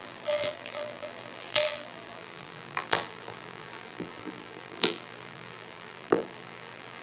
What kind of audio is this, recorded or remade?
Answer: remade